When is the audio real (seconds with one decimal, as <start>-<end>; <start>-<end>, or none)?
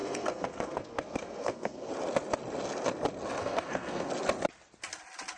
1.9-3.4; 4.1-5.4